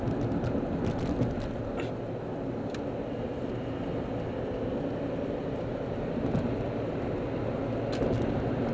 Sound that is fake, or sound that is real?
real